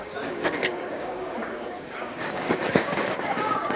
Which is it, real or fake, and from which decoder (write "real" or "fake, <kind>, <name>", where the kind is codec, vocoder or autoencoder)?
fake, codec, DAC